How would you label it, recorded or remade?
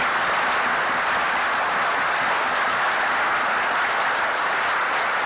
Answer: recorded